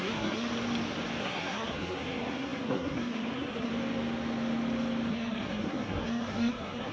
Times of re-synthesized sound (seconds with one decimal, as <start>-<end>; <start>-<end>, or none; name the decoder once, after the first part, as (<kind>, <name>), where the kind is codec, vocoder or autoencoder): 0.0-0.5 (codec, SNAC); 1.2-3.7; 5.1-6.9

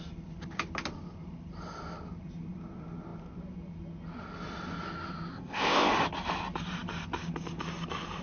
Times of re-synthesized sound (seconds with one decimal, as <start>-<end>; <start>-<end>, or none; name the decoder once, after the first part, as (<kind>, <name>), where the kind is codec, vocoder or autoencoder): 5.3-5.9 (codec, ZipCodec)

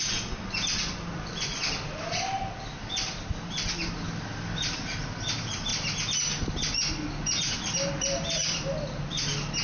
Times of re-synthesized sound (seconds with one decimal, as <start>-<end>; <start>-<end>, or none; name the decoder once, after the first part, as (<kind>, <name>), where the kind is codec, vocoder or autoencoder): none